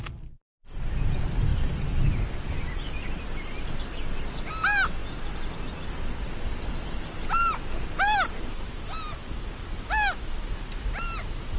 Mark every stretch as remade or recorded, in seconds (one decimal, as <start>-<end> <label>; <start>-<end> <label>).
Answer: 0.0-11.6 recorded